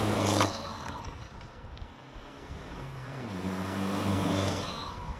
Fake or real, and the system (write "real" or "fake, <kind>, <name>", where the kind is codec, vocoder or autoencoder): fake, codec, SNAC